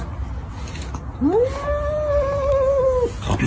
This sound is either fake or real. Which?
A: real